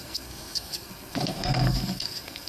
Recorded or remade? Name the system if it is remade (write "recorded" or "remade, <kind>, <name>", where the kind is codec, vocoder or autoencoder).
remade, codec, SNAC